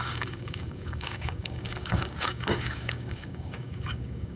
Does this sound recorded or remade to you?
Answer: remade